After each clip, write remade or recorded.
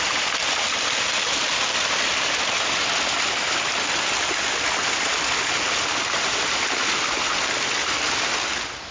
recorded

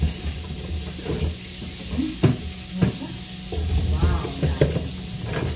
recorded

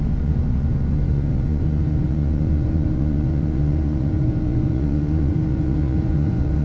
remade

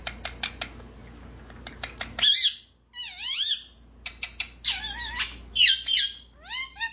recorded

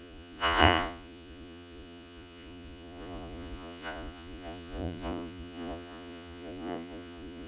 remade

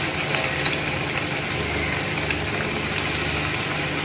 recorded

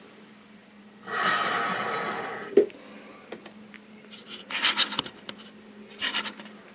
recorded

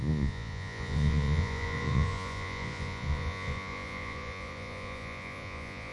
remade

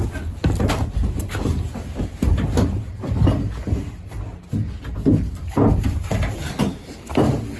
recorded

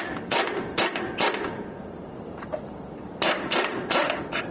recorded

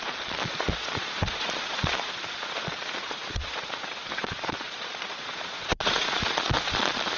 remade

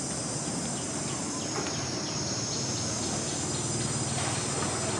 recorded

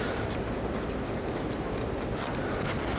recorded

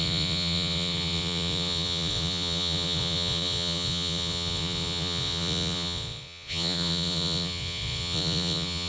remade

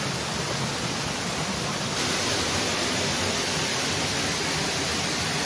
recorded